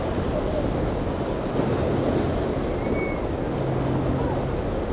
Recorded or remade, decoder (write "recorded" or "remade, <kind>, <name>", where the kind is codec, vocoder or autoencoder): recorded